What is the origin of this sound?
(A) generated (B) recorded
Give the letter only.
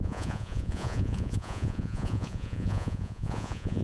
A